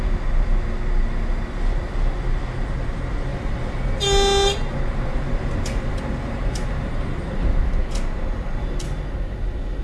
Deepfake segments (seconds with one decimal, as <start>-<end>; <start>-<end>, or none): 3.3-4.0; 4.5-7.6